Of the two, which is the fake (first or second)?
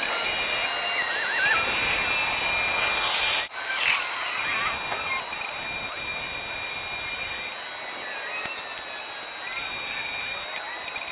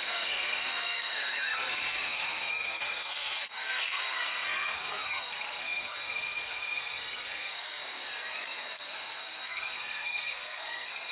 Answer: second